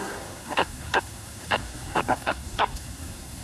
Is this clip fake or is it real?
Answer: fake